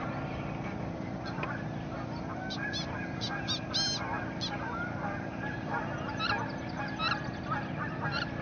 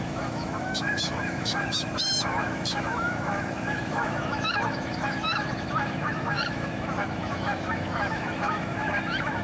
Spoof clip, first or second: second